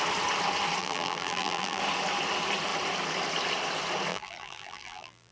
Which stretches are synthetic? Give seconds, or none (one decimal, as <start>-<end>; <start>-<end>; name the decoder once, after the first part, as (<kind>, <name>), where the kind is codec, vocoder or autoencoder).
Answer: 0.8-1.8 (vocoder, BigVGAN v2); 4.1-5.3